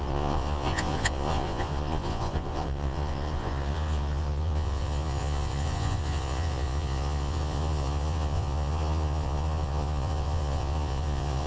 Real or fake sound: fake